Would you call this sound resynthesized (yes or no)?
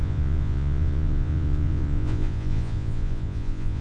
yes